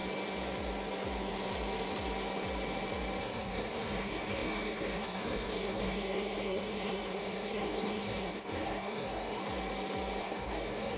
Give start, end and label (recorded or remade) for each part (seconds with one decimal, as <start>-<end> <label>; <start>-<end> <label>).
0.0-3.2 recorded; 3.2-9.4 remade; 9.4-10.2 recorded; 10.2-11.0 remade

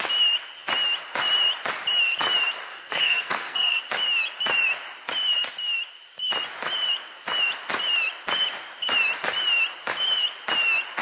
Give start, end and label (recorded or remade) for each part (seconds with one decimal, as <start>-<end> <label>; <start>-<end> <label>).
0.0-2.7 recorded; 2.7-3.8 remade; 3.8-11.0 recorded

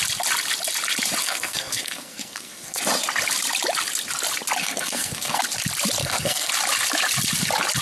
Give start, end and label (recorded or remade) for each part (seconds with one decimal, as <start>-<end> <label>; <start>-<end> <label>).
0.0-1.2 recorded; 1.2-2.8 remade; 2.8-4.6 recorded; 4.6-5.4 remade; 5.4-6.0 recorded; 6.0-6.5 remade; 6.5-7.8 recorded

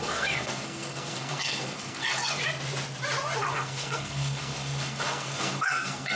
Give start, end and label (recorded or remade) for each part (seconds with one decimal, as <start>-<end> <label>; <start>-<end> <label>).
0.0-2.4 remade; 2.4-3.4 recorded; 3.4-6.2 remade

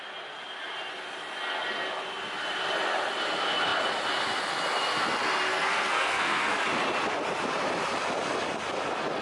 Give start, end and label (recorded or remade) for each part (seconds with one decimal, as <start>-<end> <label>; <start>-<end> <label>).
0.0-5.5 recorded; 5.5-6.6 remade; 6.6-9.2 recorded

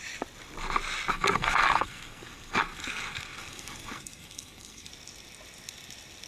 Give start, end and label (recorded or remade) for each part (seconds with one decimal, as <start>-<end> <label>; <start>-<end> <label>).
0.0-1.1 recorded; 1.1-4.9 remade; 4.9-6.3 recorded

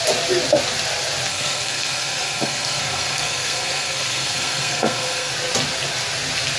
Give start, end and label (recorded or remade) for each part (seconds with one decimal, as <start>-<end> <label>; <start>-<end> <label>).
0.0-1.3 recorded; 1.3-5.3 remade; 5.3-6.6 recorded